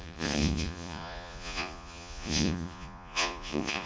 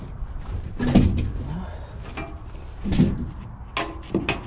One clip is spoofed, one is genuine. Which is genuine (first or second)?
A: second